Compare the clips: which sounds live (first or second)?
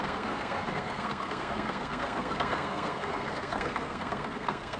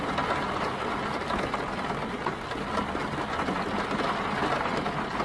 second